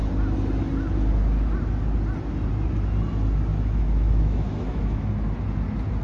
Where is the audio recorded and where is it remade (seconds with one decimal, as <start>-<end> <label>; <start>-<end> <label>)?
0.0-3.5 recorded; 3.5-5.1 remade; 5.1-6.0 recorded